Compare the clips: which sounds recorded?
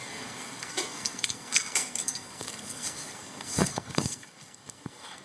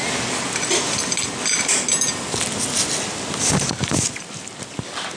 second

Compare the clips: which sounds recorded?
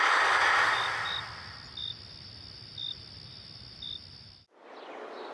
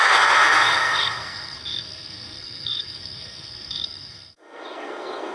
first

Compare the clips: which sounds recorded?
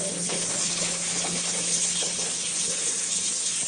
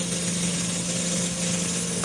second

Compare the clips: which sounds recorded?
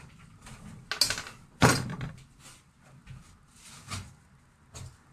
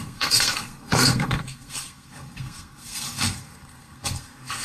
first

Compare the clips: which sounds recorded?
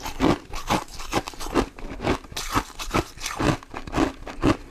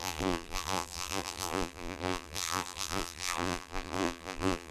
first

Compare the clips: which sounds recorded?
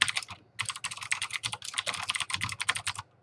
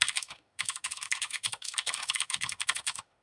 first